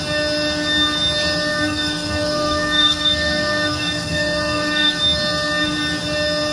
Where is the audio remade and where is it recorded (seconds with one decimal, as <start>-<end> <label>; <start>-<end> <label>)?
0.0-1.5 recorded; 1.5-5.0 remade; 5.0-6.5 recorded